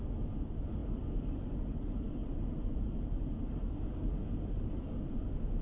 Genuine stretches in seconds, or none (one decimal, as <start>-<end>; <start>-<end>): 0.0-0.8; 1.7-2.2; 3.0-4.2; 4.9-5.6